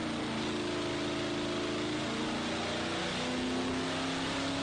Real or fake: real